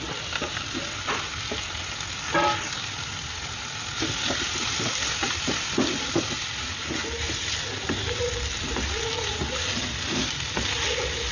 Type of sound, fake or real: real